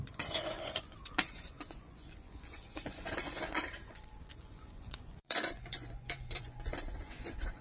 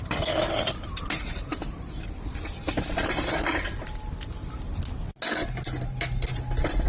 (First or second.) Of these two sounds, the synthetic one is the first